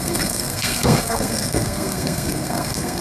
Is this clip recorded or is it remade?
remade